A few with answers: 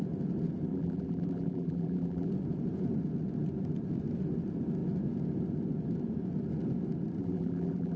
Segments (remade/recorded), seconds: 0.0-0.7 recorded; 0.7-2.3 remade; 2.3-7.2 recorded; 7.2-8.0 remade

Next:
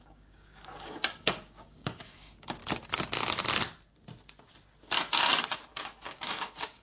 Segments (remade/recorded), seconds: 0.0-2.6 remade; 2.6-5.7 recorded; 5.7-6.8 remade